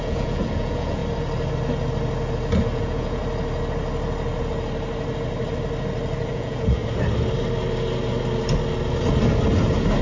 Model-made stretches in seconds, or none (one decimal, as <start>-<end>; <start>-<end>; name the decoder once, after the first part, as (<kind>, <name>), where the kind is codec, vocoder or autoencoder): 0.0-1.0 (vocoder, Vocos); 2.8-3.2; 6.3-6.8